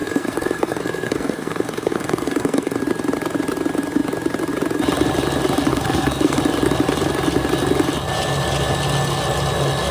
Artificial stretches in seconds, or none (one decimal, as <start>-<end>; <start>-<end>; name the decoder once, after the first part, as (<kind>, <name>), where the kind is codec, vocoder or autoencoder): 0.0-2.8 (codec, SNAC); 5.7-6.4